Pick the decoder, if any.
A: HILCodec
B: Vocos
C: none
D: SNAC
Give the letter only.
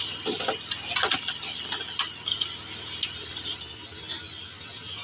C